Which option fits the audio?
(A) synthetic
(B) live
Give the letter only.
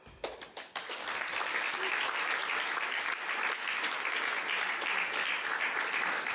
B